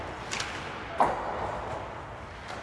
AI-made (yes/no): no